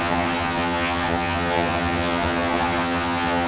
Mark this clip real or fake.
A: fake